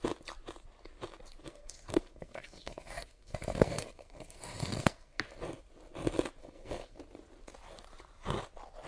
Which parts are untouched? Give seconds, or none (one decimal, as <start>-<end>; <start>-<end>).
0.0-1.4; 5.2-6.4; 7.0-8.9

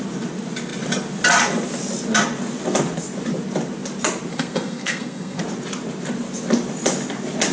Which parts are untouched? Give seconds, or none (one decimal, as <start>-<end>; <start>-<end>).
0.0-4.3; 5.4-7.5